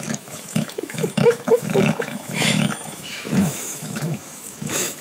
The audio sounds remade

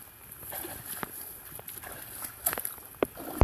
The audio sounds recorded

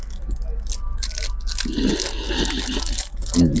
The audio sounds recorded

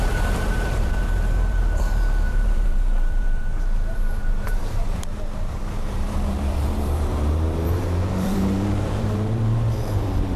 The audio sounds remade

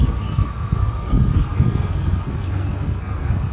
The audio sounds remade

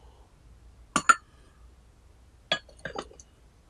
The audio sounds recorded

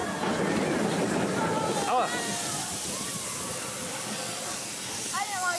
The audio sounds recorded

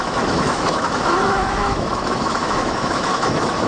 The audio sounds remade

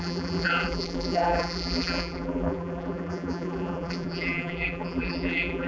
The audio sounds remade